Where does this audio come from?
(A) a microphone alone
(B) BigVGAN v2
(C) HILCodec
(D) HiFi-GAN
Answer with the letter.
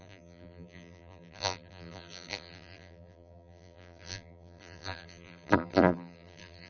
B